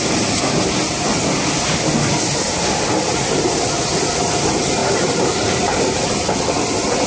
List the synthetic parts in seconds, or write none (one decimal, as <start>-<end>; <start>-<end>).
4.8-5.8